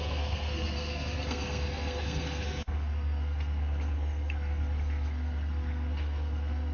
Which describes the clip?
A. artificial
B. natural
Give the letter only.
A